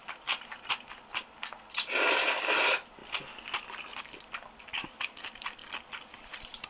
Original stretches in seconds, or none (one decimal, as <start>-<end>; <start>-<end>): 1.2-1.8; 3.0-4.0; 5.6-6.2